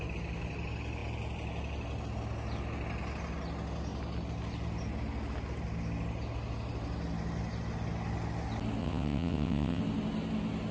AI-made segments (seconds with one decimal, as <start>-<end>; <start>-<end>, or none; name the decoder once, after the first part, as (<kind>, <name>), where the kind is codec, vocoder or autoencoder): 8.8-9.8 (vocoder, WaveNeXt)